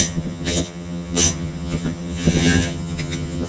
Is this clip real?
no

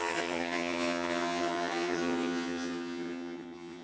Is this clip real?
no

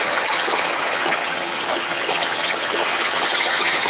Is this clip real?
no